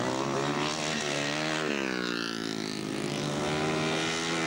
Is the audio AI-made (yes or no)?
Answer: no